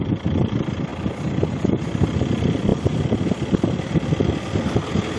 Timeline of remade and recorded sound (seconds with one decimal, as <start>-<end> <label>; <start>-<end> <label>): 0.0-0.9 recorded; 0.9-1.5 remade; 1.5-5.2 recorded